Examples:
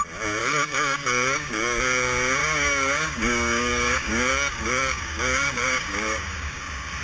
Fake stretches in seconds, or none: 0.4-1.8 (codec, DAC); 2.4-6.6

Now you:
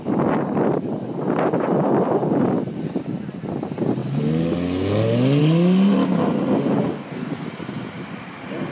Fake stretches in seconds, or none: 6.9-7.5 (codec, DAC)

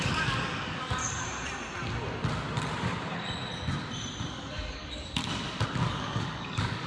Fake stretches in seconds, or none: 0.0-1.0 (codec, DAC); 4.3-5.2; 5.9-6.9

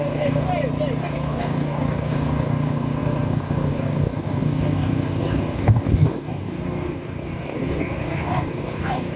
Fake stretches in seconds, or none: 0.0-0.5 (codec, DAC); 1.0-9.2